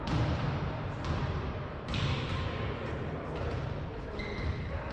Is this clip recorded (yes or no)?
yes